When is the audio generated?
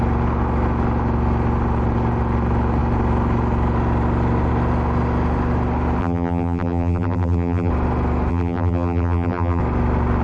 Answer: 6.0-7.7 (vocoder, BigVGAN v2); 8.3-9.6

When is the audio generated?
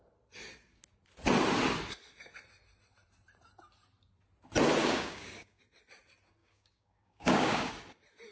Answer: 4.8-5.6 (codec, DAC); 6.4-7.7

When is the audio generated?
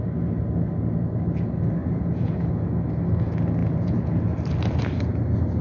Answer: 1.8-2.5 (vocoder, Vocos); 3.6-4.2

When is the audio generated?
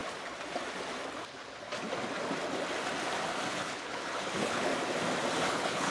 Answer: 3.5-4.7 (codec, HILCodec); 5.5-5.9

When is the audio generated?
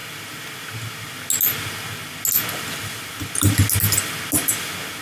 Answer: none